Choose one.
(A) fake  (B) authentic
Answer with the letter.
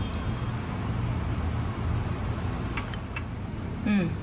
B